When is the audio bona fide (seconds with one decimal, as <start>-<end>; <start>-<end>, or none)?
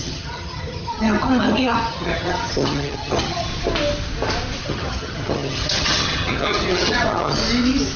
3.5-4.6; 7.4-8.0